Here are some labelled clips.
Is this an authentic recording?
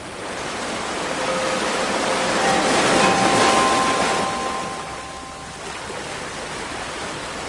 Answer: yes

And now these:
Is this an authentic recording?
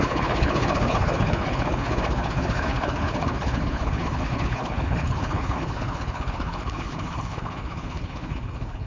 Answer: no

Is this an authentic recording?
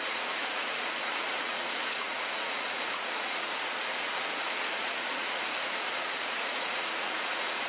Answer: no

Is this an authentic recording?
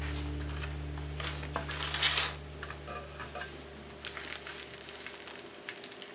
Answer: yes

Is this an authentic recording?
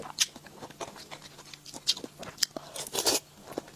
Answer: yes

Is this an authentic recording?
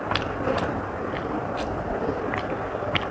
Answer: no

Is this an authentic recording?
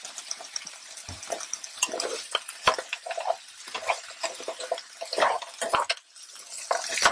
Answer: yes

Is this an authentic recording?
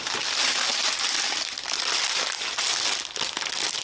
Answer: yes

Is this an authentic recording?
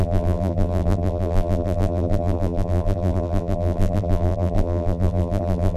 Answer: no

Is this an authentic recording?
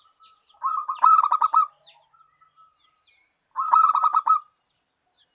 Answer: yes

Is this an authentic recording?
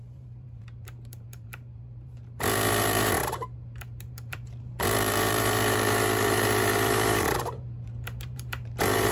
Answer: no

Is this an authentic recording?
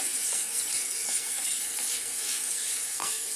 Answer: no